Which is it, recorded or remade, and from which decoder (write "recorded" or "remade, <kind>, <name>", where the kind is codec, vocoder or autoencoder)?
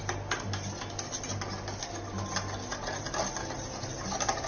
recorded